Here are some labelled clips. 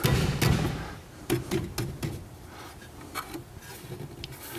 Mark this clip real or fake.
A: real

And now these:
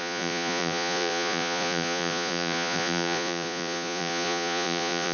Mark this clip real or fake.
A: fake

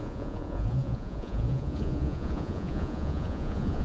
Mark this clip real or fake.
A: fake